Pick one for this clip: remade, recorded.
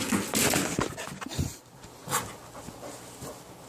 recorded